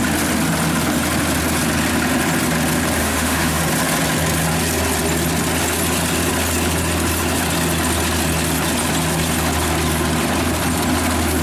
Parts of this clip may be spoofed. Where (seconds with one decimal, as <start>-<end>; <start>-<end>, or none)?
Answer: 3.0-3.6